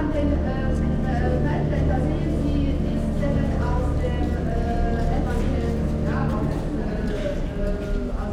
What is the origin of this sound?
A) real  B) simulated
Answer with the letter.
A